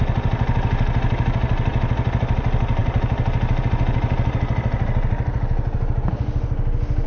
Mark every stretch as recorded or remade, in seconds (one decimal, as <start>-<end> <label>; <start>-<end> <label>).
0.0-7.1 recorded